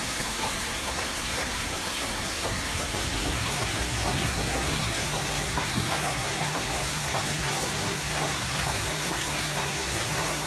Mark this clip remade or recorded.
remade